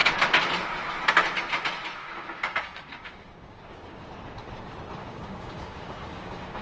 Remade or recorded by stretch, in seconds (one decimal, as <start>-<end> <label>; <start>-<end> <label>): 0.0-2.0 recorded; 2.0-4.1 remade; 4.1-5.0 recorded; 5.0-6.6 remade